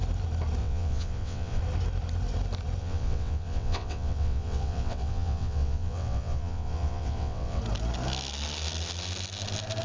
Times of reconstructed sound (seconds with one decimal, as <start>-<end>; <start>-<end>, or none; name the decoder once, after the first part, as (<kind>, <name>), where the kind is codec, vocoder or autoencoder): 0.6-1.6 (vocoder, WaveNeXt); 2.8-7.6